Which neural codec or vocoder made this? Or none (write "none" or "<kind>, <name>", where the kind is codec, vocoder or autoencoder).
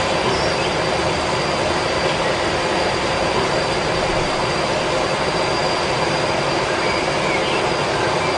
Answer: none